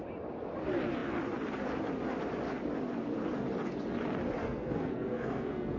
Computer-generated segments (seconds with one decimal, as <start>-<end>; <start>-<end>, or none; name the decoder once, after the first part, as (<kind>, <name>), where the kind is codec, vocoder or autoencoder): 4.4-5.8 (codec, SNAC)